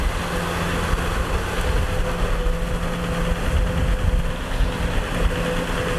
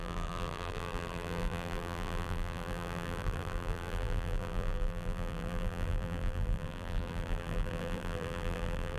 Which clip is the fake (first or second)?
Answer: second